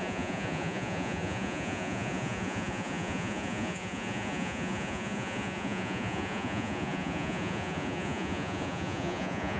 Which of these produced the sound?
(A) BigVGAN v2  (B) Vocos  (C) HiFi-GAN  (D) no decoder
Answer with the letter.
B